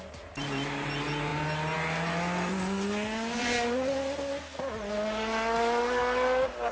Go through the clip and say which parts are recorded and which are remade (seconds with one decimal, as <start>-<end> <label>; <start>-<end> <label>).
0.0-6.7 recorded